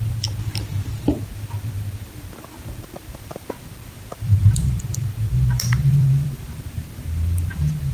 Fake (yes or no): yes